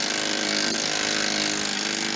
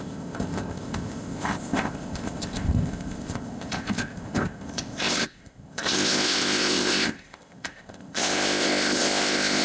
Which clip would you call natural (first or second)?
first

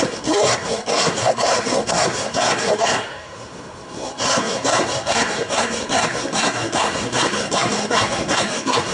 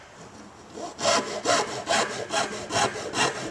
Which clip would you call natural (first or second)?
second